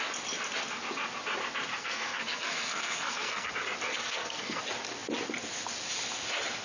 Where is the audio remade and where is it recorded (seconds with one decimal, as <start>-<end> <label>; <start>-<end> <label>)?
0.0-1.7 recorded; 1.7-3.5 remade; 3.5-3.9 recorded; 3.9-4.6 remade; 4.6-6.6 recorded